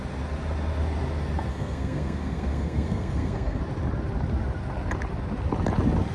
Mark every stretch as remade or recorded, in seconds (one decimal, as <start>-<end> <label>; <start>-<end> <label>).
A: 0.0-1.5 recorded; 1.5-3.6 remade; 3.6-6.1 recorded